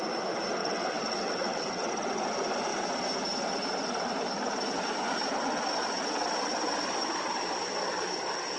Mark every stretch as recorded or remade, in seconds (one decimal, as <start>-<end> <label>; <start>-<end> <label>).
0.0-0.6 recorded; 0.6-1.9 remade; 1.9-8.6 recorded